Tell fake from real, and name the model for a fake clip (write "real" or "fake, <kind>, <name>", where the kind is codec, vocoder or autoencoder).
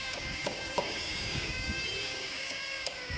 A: fake, codec, DAC